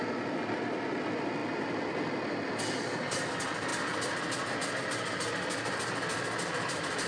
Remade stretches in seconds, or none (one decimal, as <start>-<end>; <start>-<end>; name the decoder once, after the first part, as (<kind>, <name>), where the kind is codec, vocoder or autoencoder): none